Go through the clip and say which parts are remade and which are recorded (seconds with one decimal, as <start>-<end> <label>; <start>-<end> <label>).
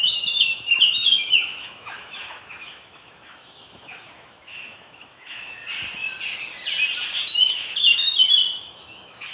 0.0-5.6 remade; 5.6-7.2 recorded; 7.2-9.3 remade